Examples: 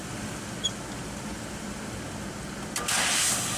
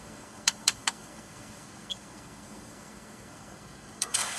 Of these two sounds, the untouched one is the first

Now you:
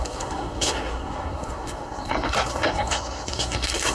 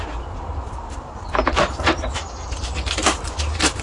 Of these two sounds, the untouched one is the second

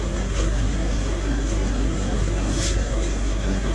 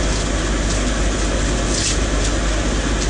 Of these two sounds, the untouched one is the second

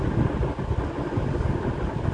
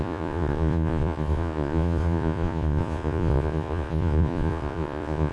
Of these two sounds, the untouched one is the first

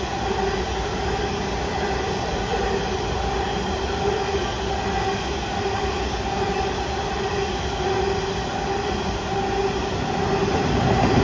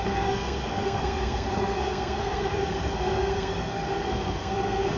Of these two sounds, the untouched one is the first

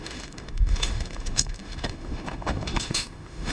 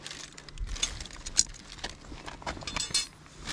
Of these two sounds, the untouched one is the second